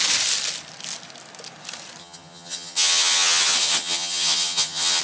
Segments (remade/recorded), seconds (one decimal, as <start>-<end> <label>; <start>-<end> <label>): 0.0-2.0 recorded; 2.0-5.0 remade